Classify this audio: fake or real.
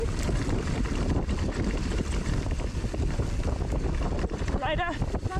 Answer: real